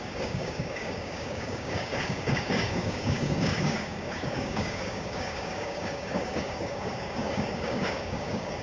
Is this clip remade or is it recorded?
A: remade